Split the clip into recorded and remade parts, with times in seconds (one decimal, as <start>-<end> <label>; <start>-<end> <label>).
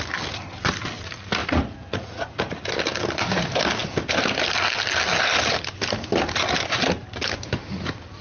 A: 0.0-1.4 recorded; 1.4-2.7 remade; 2.7-8.2 recorded